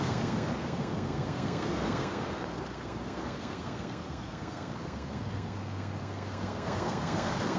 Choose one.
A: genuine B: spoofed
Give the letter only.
B